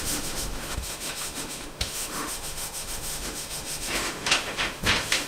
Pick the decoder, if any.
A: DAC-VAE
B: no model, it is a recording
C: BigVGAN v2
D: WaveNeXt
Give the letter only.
A